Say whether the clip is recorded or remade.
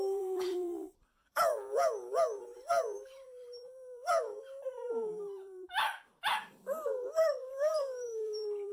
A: remade